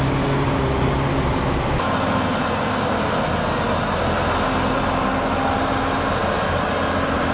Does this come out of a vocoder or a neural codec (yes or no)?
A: no